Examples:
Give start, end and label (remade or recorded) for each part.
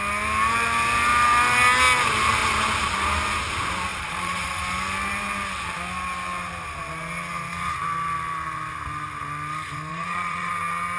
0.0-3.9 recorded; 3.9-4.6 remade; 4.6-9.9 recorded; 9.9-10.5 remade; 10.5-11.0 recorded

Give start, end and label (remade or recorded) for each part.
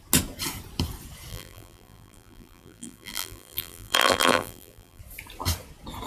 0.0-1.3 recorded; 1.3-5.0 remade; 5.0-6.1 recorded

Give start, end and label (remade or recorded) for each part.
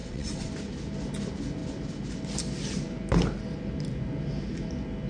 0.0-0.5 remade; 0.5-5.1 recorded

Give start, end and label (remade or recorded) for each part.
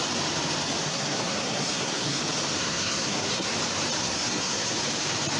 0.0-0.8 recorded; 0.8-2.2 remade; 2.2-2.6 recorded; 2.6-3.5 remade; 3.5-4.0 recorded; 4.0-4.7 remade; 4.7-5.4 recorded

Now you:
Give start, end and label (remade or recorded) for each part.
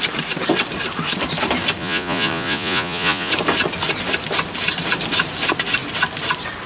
0.0-1.8 recorded; 1.8-3.3 remade; 3.3-6.7 recorded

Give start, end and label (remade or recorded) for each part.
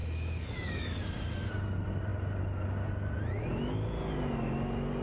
0.0-1.0 remade; 1.0-5.0 recorded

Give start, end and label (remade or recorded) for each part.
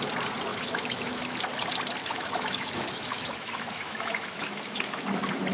0.0-0.5 recorded; 0.5-1.4 remade; 1.4-2.0 recorded; 2.0-5.0 remade; 5.0-5.5 recorded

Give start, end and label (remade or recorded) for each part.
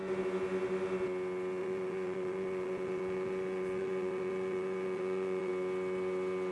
0.0-1.6 recorded; 1.6-5.5 remade; 5.5-6.5 recorded